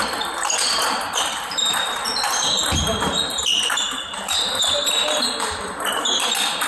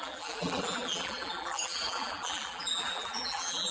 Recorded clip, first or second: first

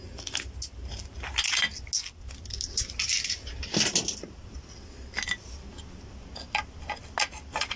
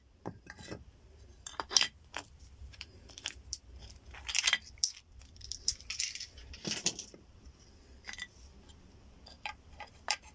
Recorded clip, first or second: first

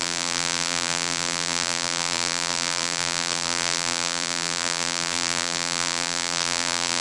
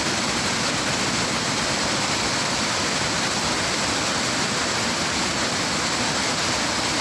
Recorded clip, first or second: second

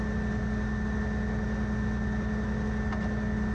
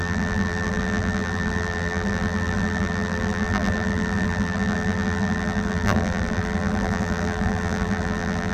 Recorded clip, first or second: first